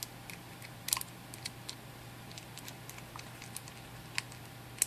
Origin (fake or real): real